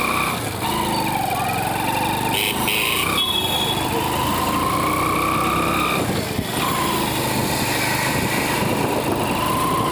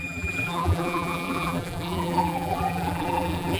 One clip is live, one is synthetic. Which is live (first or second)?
first